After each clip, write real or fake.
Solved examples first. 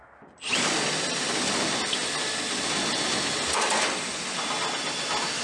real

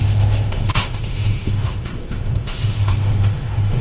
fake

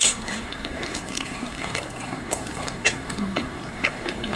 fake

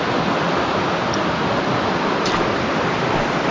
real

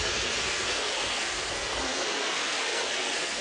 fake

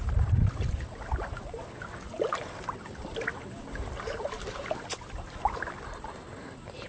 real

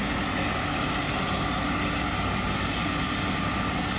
real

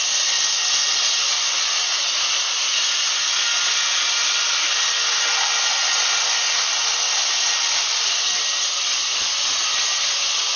real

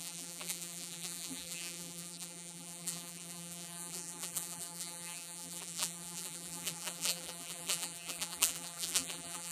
fake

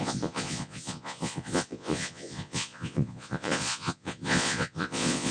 fake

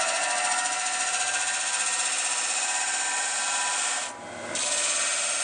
real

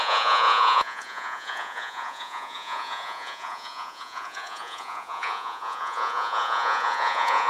fake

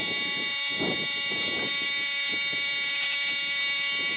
fake